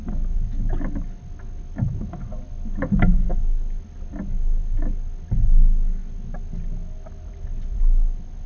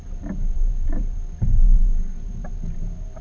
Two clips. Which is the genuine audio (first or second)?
first